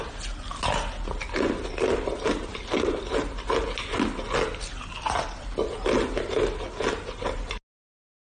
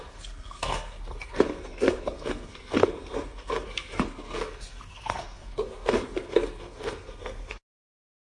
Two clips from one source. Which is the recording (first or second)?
first